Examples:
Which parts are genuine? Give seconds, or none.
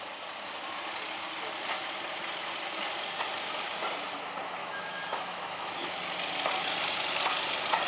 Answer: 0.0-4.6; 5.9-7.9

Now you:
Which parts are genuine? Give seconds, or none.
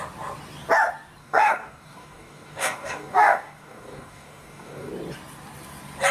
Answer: 0.0-1.2; 4.9-6.1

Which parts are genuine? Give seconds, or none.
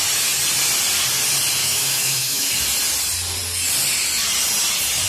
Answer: 0.0-1.6; 2.5-5.1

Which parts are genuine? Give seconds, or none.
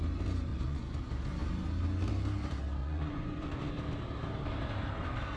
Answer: 0.0-0.5; 1.0-2.8; 3.7-5.4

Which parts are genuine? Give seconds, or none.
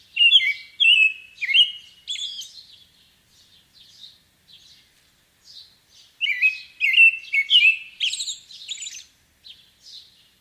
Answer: 0.0-10.4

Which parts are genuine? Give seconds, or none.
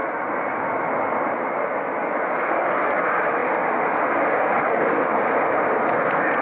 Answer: 0.0-6.4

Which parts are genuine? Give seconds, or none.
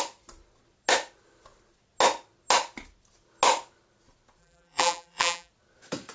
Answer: 0.0-4.4; 5.5-6.1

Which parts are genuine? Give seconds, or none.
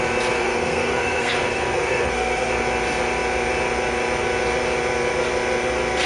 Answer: 0.0-0.4; 2.5-6.1